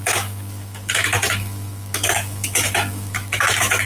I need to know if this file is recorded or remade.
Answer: remade